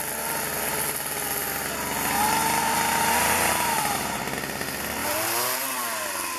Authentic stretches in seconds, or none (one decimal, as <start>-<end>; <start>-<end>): 0.0-2.4; 4.2-5.0; 5.6-6.4